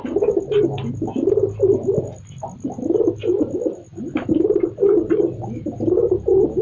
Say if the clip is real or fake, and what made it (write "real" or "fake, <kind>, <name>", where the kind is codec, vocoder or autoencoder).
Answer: real